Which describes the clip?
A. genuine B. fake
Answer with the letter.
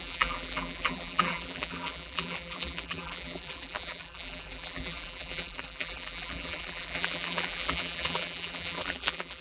B